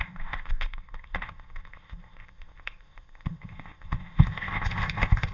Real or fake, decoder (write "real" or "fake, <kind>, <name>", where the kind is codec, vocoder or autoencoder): fake, codec, ZipCodec